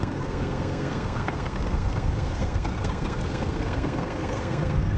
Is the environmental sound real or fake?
fake